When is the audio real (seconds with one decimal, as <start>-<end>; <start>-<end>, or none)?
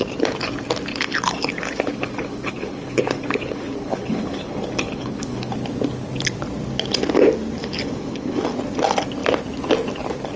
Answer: 0.0-0.9; 5.5-7.6; 8.4-10.4